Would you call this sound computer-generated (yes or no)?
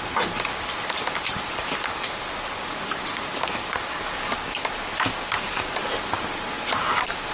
no